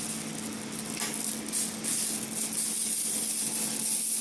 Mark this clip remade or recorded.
recorded